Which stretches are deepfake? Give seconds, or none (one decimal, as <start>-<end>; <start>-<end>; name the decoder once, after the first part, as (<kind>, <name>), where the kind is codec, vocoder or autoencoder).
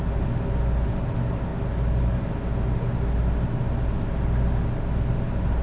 none